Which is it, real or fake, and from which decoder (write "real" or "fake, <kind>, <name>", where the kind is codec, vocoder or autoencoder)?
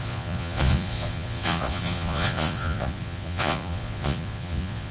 fake, vocoder, Vocos